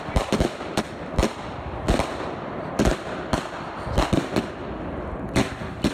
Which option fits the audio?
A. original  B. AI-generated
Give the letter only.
A